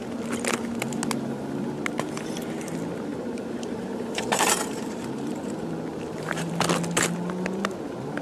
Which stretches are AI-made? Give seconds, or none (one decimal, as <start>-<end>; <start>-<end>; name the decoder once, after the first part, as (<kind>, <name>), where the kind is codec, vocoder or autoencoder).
3.1-6.5 (vocoder, BigVGAN v2)